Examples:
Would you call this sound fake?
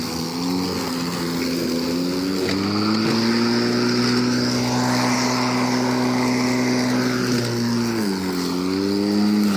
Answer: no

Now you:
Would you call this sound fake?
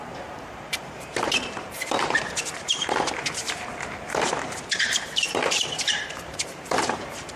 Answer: yes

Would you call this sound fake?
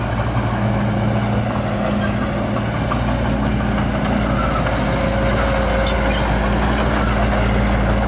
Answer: no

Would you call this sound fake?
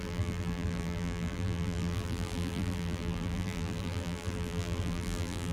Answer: yes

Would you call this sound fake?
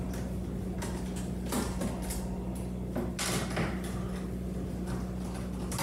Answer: no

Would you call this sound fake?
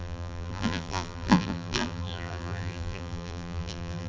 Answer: yes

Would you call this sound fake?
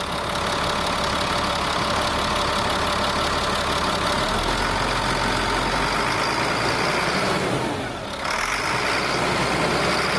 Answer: no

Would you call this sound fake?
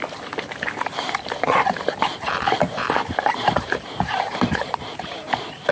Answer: yes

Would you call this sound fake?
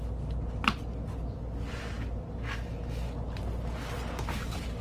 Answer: no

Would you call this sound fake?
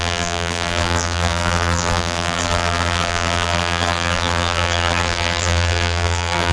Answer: yes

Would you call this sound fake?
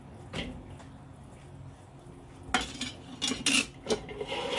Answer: no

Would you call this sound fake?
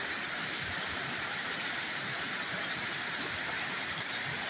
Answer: yes